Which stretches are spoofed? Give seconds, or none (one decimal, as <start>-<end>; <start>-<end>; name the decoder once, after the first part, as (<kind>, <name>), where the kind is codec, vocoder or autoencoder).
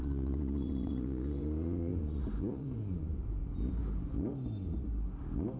0.0-3.4 (vocoder, Vocos)